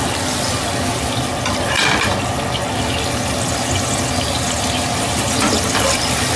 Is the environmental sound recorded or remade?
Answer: recorded